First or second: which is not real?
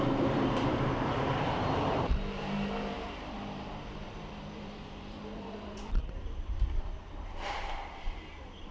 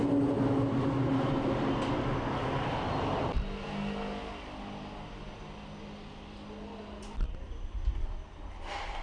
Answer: first